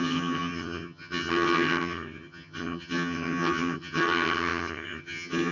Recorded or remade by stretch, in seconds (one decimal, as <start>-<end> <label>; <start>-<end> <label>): 0.0-5.5 remade